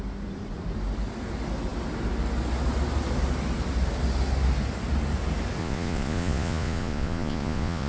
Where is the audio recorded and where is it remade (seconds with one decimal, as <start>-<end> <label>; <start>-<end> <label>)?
0.0-5.6 recorded; 5.6-7.9 remade